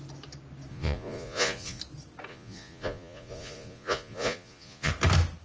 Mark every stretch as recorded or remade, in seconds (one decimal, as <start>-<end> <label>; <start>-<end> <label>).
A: 0.0-0.7 recorded; 0.7-1.8 remade; 1.8-2.3 recorded; 2.3-4.9 remade; 4.9-5.4 recorded